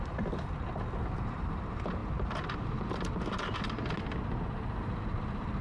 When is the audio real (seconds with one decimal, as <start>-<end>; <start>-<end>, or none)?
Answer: 0.0-5.6